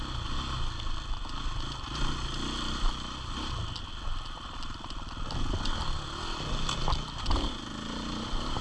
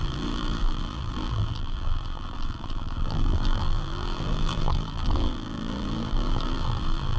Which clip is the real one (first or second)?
first